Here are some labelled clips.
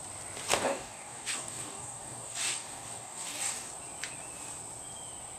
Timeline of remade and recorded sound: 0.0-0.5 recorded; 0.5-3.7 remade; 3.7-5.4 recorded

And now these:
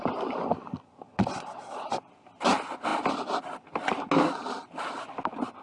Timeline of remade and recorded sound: 0.0-5.6 recorded

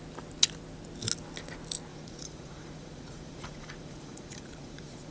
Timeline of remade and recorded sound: 0.0-1.9 recorded; 1.9-5.1 remade

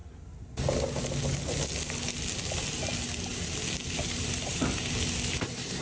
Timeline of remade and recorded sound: 0.0-3.3 recorded; 3.3-4.5 remade; 4.5-5.8 recorded

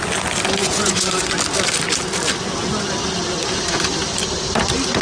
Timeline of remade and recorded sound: 0.0-0.6 recorded; 0.6-1.3 remade; 1.3-5.0 recorded

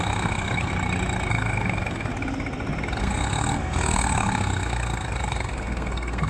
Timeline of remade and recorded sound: 0.0-0.7 remade; 0.7-1.3 recorded; 1.3-2.1 remade; 2.1-3.0 recorded; 3.0-6.3 remade